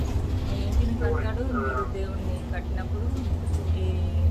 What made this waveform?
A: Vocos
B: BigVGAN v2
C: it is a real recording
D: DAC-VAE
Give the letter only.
C